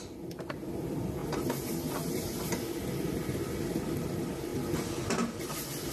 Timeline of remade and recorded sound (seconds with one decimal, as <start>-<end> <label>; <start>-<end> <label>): 0.0-1.2 remade; 1.2-3.6 recorded; 3.6-4.5 remade; 4.5-5.9 recorded